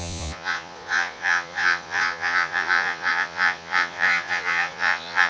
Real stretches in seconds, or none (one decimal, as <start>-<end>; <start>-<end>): none